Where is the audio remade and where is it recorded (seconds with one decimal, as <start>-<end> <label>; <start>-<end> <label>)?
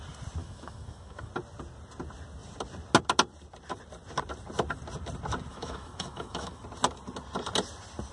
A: 0.0-0.4 recorded; 0.4-1.3 remade; 1.3-5.5 recorded; 5.5-6.6 remade; 6.6-8.1 recorded